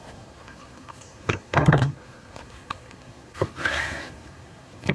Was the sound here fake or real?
fake